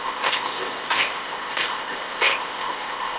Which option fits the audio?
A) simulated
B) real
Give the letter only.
A